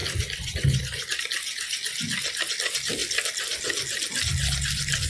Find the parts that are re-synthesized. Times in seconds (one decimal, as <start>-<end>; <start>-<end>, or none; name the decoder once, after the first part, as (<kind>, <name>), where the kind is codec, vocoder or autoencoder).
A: none

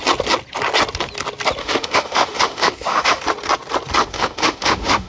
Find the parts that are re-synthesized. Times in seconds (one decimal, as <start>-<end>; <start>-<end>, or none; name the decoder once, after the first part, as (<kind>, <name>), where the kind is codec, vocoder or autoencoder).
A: 1.6-3.2 (autoencoder, DAC-VAE); 4.0-5.1